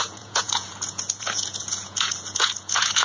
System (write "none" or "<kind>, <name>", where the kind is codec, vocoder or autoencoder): vocoder, Vocos